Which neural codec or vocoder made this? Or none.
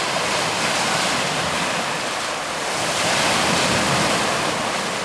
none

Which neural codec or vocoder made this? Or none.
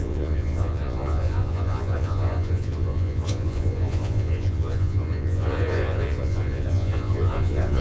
vocoder, Vocos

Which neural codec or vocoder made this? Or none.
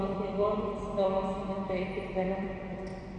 vocoder, BigVGAN v2